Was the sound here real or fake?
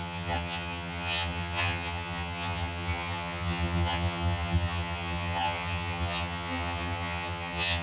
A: fake